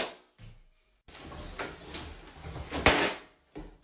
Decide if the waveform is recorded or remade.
recorded